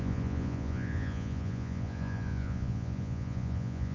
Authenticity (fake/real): fake